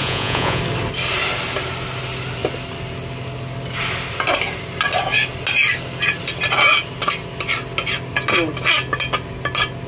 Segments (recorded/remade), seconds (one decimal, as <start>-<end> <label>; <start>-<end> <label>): 0.0-0.6 remade; 0.6-9.9 recorded